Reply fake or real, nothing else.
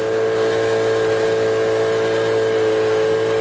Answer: real